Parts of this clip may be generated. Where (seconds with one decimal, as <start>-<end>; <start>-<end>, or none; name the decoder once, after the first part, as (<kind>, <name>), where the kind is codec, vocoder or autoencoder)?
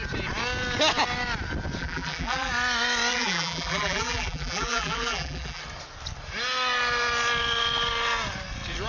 1.8-2.5 (vocoder, BigVGAN v2); 3.1-5.6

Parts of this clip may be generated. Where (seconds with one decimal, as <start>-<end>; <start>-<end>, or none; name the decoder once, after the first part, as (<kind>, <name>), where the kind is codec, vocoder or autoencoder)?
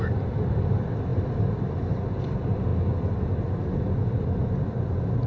0.0-1.1 (vocoder, BigVGAN v2); 2.0-2.7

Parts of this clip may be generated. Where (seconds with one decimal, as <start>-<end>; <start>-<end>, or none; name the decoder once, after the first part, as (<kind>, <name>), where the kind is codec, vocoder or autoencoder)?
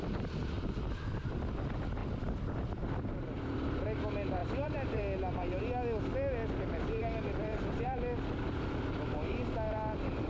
2.0-3.7 (vocoder, BigVGAN v2); 4.4-5.0; 7.0-8.0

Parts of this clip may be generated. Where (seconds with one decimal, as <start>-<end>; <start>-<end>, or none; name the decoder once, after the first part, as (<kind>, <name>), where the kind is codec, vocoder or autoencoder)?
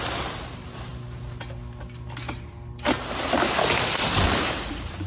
0.0-0.9 (vocoder, BigVGAN v2); 4.0-5.1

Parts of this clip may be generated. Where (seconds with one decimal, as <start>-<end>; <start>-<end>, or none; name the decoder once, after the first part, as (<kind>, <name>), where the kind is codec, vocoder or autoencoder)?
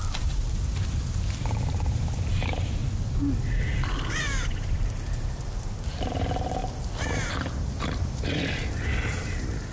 0.0-2.8 (vocoder, BigVGAN v2); 4.2-6.6; 7.3-9.7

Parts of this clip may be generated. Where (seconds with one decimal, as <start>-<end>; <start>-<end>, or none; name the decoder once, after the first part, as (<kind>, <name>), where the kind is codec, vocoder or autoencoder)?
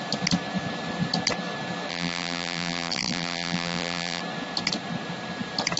1.9-4.2 (vocoder, BigVGAN v2)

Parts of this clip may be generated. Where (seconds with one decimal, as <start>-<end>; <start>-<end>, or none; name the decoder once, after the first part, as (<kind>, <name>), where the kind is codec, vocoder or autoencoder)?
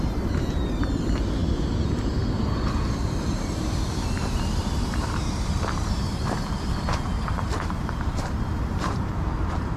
0.0-1.4 (vocoder, BigVGAN v2); 3.1-9.8